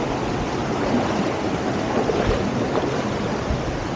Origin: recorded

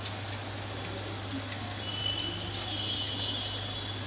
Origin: recorded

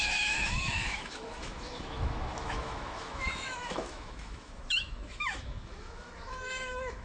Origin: remade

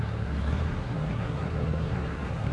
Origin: remade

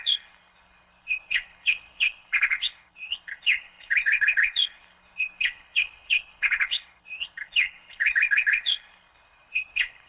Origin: remade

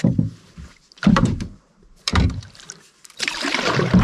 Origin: remade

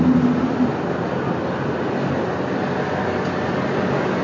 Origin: recorded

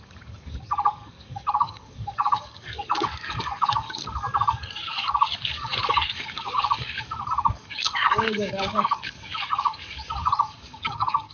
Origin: remade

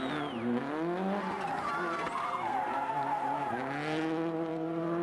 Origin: recorded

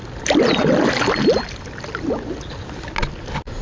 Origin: recorded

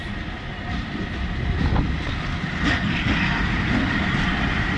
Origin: recorded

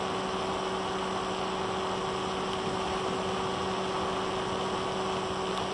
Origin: recorded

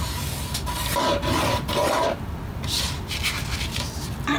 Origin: recorded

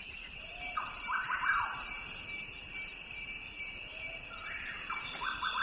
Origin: recorded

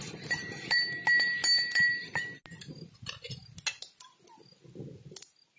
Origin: recorded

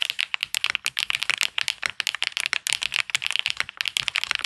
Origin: recorded